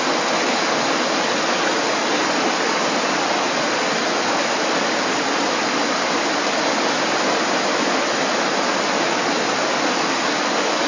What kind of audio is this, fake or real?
real